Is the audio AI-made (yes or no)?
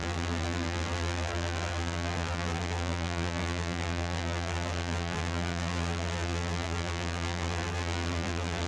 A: yes